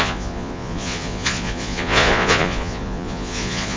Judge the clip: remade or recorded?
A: remade